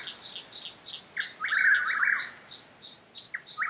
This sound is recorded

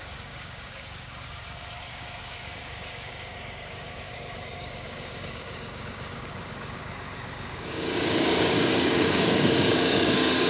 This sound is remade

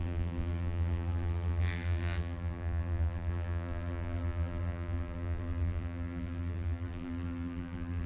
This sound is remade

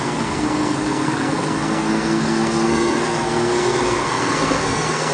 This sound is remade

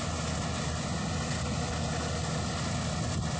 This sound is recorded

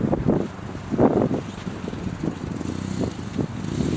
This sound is recorded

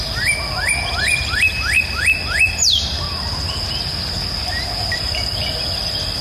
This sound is recorded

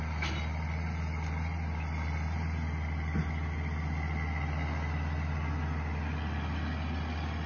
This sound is recorded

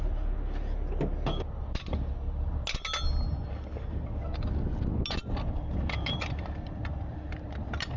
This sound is recorded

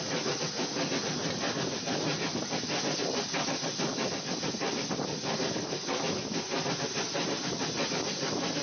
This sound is recorded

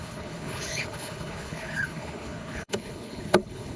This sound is remade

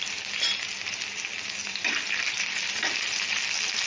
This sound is recorded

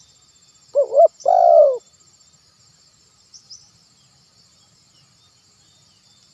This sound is recorded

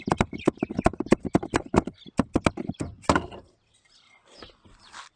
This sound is recorded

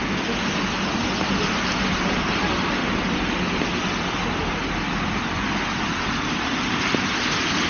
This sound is recorded